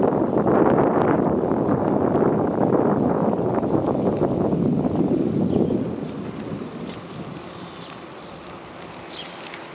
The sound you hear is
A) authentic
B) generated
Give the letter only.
A